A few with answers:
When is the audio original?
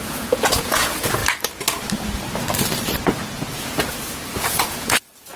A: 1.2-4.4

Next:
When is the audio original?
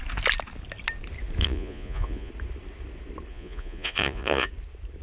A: 0.0-1.4; 2.3-3.3; 4.5-5.0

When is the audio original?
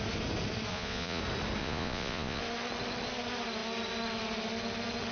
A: 0.0-0.7; 1.2-1.6; 2.4-5.1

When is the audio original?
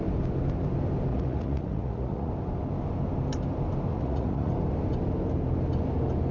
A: 0.0-1.1; 2.3-3.9; 4.5-6.3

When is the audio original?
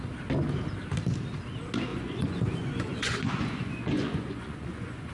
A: 0.0-1.9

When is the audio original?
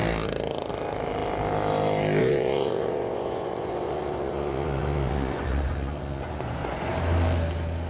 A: 0.0-2.2; 6.9-7.9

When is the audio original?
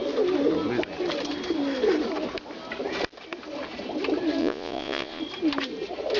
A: 0.0-4.4; 5.2-6.2